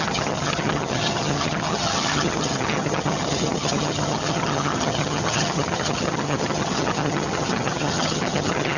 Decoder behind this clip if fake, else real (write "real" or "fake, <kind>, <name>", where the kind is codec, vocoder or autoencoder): fake, vocoder, HiFi-GAN